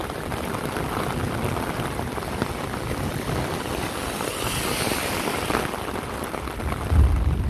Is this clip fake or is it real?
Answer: real